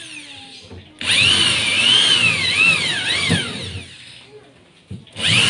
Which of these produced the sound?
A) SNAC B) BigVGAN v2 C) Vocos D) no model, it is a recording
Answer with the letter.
D